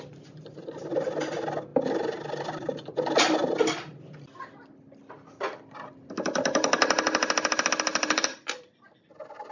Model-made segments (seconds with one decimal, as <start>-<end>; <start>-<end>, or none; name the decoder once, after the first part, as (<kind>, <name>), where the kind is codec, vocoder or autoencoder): 7.9-9.5 (vocoder, BigVGAN v2)